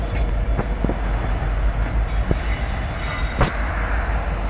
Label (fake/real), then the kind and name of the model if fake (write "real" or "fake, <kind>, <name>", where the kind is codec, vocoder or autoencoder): real